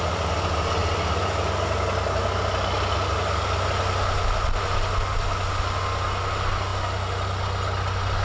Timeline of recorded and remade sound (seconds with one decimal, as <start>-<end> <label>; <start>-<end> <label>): 0.0-8.2 recorded